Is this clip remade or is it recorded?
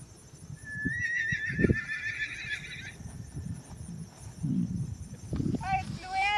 recorded